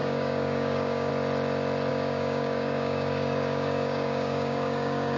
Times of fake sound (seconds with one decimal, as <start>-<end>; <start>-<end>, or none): 0.0-1.1; 1.9-5.2

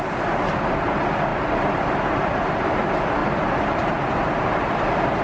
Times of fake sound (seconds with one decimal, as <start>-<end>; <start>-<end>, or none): none